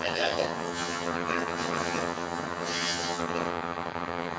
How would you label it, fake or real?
fake